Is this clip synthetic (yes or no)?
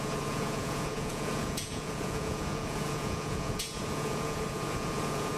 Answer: yes